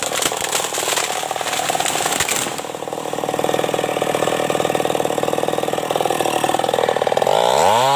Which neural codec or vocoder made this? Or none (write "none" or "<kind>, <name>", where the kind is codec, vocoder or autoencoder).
none